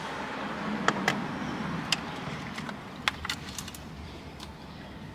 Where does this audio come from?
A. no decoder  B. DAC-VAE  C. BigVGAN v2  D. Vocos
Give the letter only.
A